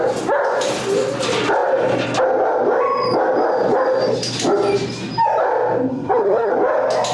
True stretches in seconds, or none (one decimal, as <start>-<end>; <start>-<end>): 0.0-5.9; 6.5-7.1